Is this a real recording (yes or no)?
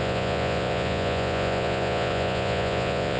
no